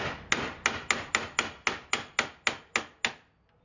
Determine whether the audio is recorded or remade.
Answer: recorded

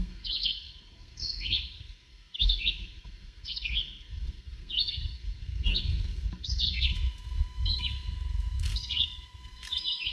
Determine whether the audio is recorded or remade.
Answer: remade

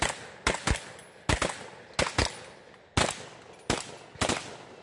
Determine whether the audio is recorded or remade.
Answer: recorded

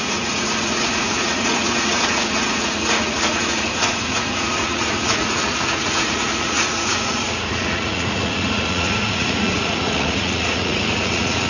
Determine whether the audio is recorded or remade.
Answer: remade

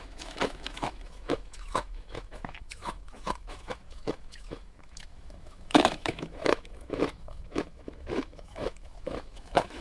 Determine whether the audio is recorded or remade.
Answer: remade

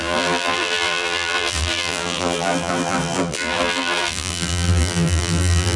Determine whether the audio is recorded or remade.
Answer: remade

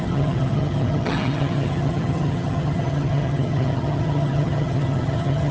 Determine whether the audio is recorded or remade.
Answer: remade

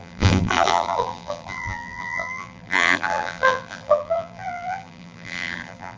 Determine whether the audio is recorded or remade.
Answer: remade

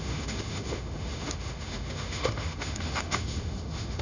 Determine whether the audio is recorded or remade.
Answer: remade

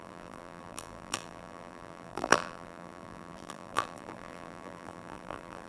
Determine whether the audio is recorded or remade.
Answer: remade